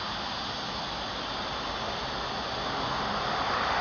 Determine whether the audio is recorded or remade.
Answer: recorded